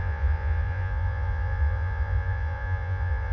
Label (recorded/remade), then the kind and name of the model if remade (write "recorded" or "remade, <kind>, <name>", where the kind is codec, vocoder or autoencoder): remade, vocoder, Vocos